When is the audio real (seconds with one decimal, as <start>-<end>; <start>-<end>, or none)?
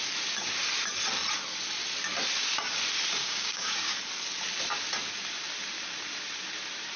0.0-3.2; 3.9-7.0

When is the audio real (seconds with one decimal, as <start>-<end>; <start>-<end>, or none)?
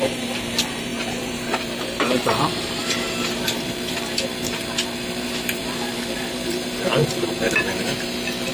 none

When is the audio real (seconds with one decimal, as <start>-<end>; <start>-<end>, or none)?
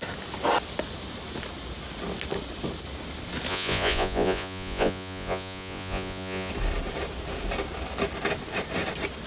0.0-3.5; 6.5-9.3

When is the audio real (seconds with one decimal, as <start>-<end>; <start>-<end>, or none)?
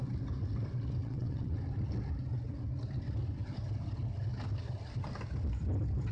0.0-1.0; 1.6-6.1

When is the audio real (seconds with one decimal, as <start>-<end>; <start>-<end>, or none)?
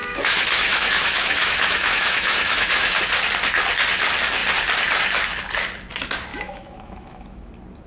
3.0-6.3; 7.5-7.9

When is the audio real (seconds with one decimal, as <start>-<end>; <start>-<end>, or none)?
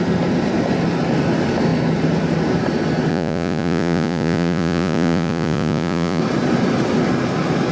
0.0-3.1; 6.2-7.7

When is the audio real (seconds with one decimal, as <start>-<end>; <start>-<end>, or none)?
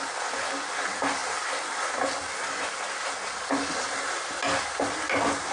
0.0-5.5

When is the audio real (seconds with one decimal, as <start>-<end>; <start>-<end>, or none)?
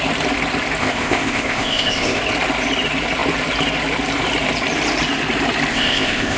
0.0-0.8; 2.2-5.7